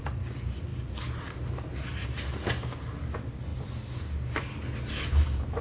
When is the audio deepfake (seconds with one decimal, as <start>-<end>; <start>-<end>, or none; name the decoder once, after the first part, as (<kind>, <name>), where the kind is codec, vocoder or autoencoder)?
none